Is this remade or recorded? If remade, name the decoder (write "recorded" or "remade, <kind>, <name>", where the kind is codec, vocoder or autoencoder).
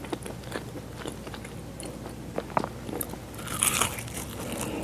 recorded